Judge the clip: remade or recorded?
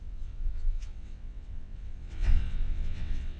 remade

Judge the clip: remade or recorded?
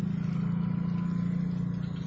recorded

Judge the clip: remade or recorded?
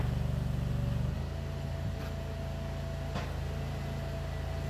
recorded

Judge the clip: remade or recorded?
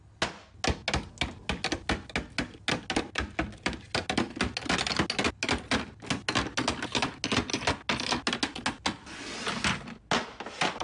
recorded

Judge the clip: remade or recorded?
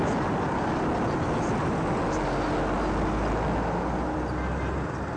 recorded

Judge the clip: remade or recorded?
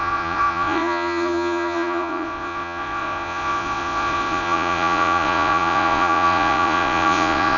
remade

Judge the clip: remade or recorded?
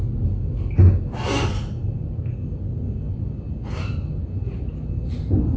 recorded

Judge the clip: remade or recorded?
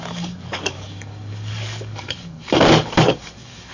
remade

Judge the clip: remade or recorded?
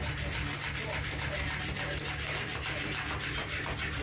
recorded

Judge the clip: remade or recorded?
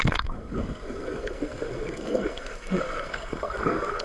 remade